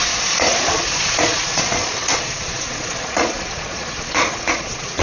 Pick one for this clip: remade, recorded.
remade